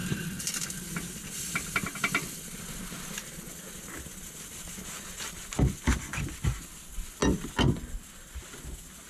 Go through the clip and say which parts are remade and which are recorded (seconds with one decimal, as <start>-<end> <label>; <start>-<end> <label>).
0.0-0.9 remade; 0.9-7.8 recorded; 7.8-8.4 remade; 8.4-9.1 recorded